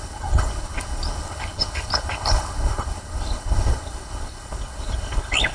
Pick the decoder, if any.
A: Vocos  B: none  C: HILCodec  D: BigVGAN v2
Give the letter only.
C